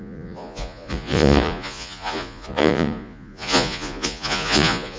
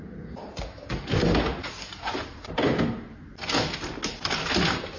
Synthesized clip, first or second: first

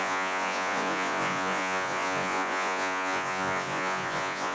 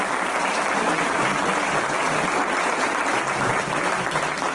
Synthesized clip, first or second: first